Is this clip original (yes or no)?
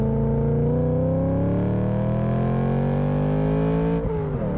yes